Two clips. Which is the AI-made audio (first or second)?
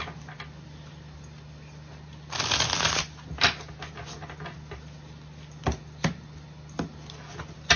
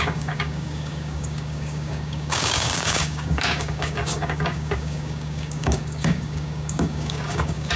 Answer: second